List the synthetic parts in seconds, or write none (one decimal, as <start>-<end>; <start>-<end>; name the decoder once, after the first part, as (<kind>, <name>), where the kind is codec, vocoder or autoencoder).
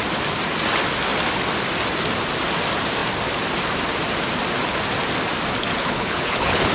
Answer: 5.7-6.7 (codec, HILCodec)